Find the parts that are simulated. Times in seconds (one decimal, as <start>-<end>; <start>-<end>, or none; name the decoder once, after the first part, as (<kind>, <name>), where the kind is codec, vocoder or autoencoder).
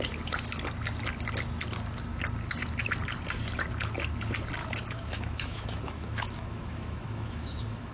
4.6-7.9 (autoencoder, DAC-VAE)